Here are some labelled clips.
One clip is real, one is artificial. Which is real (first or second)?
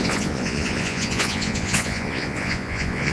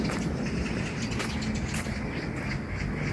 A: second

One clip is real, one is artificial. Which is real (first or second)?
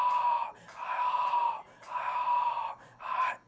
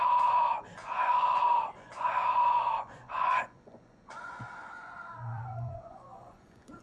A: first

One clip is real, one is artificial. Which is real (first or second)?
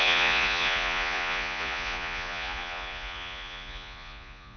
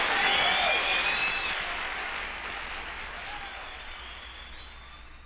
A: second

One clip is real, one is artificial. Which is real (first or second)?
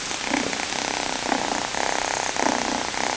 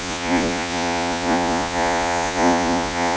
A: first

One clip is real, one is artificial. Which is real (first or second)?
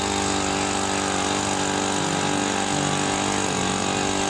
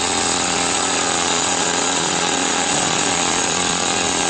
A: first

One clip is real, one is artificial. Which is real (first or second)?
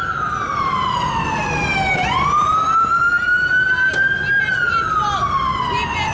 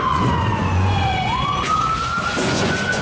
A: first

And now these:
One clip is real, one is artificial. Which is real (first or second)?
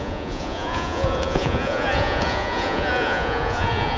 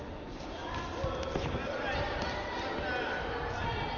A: second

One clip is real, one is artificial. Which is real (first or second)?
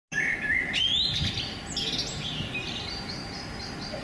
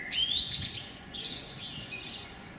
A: first